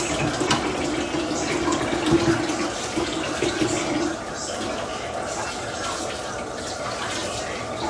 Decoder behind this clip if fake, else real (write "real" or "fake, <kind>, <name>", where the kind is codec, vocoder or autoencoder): real